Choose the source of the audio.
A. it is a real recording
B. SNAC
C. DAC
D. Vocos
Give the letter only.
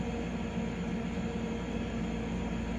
A